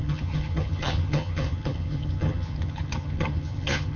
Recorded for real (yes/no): no